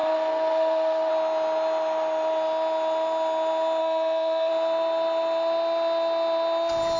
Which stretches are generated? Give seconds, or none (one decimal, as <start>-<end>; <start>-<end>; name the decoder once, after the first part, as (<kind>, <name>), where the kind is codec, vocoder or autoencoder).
0.0-1.1 (codec, SNAC); 3.8-4.5